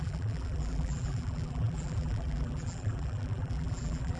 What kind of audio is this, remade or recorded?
remade